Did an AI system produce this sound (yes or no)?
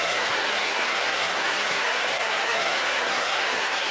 yes